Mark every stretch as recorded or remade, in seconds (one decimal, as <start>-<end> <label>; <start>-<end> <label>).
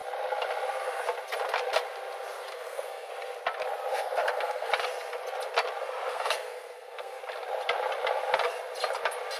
0.0-2.5 recorded; 2.5-3.1 remade; 3.1-3.9 recorded; 3.9-4.7 remade; 4.7-6.1 recorded; 6.1-7.2 remade; 7.2-9.4 recorded